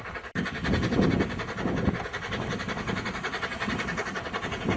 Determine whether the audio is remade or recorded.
recorded